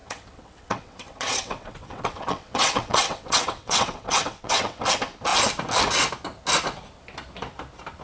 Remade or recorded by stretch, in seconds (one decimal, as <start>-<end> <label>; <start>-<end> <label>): 0.0-4.8 remade; 4.8-8.0 recorded